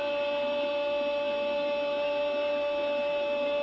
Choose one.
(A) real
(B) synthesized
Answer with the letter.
A